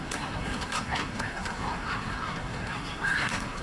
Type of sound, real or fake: fake